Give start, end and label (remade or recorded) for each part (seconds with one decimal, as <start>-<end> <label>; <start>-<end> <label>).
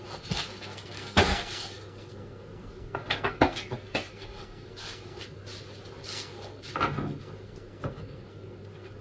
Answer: 0.0-5.4 remade; 5.4-6.0 recorded; 6.0-9.0 remade